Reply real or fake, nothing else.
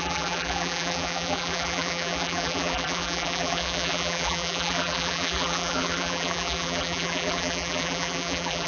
fake